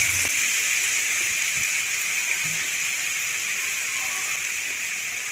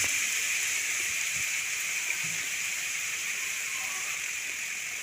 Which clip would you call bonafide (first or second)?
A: first